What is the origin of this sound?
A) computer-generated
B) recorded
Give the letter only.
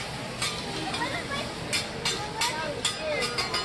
B